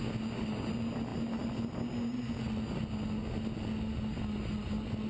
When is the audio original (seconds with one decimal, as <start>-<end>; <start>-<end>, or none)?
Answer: 0.0-5.1